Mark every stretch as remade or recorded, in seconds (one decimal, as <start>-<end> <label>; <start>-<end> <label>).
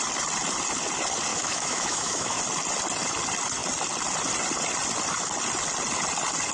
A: 0.0-1.3 recorded; 1.3-2.4 remade; 2.4-6.5 recorded